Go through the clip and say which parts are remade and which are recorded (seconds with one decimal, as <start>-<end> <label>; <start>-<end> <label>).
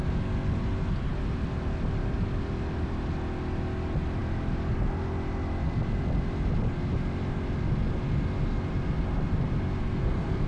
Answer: 0.0-9.8 recorded; 9.8-10.5 remade